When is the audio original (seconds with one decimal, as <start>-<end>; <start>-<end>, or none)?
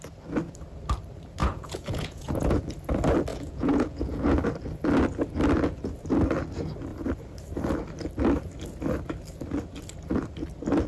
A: 0.0-1.4; 2.6-3.3; 4.4-10.9